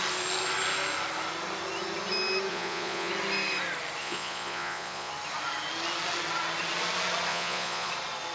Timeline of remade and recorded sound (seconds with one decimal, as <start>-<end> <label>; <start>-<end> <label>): 0.0-2.5 recorded; 2.5-3.1 remade; 3.1-4.0 recorded; 4.0-5.1 remade; 5.1-7.3 recorded; 7.3-7.9 remade; 7.9-8.3 recorded

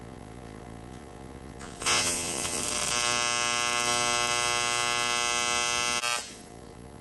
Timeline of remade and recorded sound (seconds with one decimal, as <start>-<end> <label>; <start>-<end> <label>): 0.0-2.6 remade; 2.6-6.3 recorded; 6.3-7.0 remade